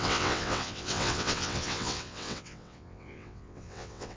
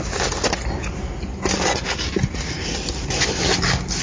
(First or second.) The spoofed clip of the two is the first